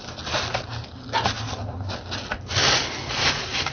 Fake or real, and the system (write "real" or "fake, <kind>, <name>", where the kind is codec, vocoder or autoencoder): real